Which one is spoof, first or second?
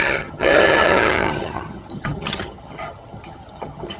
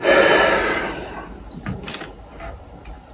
first